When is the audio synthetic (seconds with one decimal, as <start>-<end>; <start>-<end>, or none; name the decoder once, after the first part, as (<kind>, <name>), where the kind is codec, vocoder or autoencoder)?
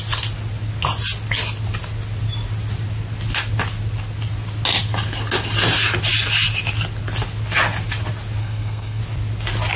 8.4-9.0 (codec, SNAC)